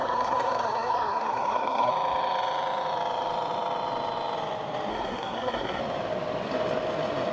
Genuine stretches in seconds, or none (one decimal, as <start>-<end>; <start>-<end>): 1.9-4.9; 5.8-7.3

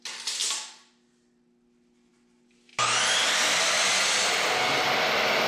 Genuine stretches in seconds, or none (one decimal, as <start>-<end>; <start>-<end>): 0.0-5.5

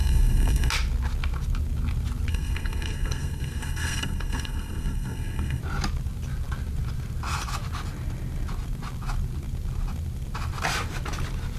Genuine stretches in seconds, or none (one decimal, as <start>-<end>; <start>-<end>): 0.7-2.3; 5.6-11.6

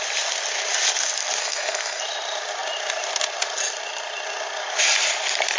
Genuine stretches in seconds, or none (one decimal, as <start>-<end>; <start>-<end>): 0.0-1.4; 2.0-5.6